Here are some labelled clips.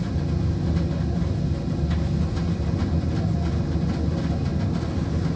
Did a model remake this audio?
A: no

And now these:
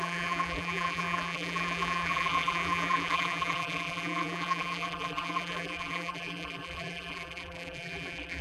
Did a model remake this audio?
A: yes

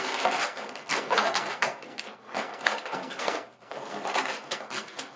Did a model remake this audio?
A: yes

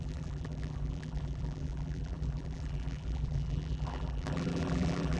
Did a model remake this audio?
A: yes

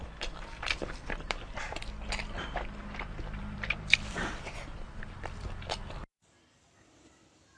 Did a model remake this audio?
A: yes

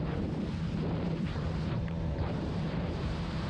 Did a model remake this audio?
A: yes